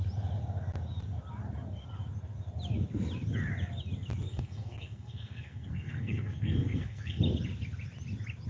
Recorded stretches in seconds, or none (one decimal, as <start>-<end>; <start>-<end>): 0.0-4.3; 7.2-8.5